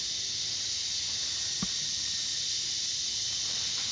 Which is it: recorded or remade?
recorded